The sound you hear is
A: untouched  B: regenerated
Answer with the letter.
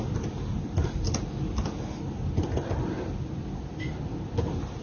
A